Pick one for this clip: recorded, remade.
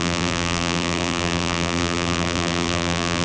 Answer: remade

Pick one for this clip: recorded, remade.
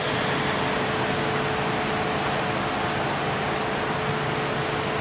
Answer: recorded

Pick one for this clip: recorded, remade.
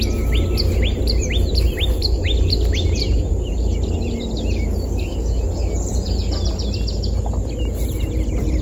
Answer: recorded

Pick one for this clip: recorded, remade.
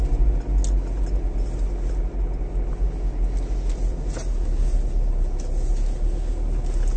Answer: recorded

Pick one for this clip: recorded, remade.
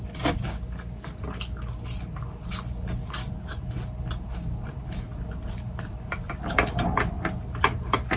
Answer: recorded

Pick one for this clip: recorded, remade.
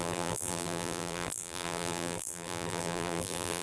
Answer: remade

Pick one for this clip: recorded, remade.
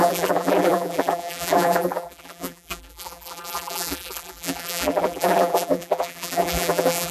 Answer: remade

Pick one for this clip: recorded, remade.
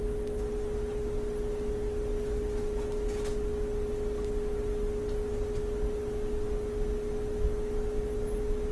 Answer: recorded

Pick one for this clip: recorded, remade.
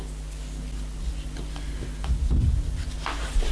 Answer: recorded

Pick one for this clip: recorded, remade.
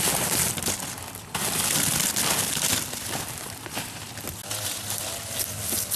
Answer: recorded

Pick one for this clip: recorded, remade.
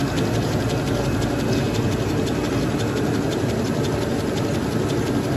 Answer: recorded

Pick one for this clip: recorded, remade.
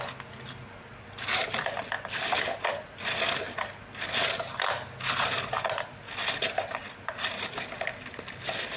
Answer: recorded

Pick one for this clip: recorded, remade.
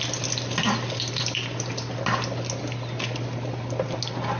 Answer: recorded